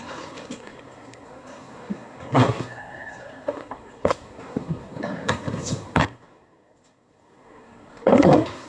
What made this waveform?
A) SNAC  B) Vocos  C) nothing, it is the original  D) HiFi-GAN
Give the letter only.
A